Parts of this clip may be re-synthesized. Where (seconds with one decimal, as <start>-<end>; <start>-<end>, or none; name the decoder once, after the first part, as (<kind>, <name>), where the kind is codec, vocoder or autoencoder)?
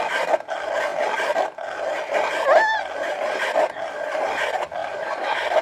none